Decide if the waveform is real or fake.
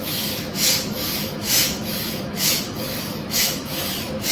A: fake